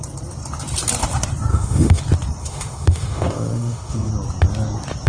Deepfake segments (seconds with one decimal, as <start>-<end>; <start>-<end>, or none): 1.5-2.0; 2.4-4.1